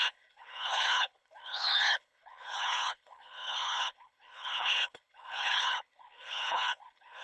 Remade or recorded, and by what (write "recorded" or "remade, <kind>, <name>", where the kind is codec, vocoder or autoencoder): remade, codec, HILCodec